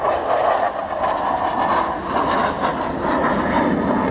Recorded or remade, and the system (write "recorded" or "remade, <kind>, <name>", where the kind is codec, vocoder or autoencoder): recorded